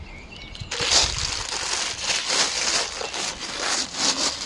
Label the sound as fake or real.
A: real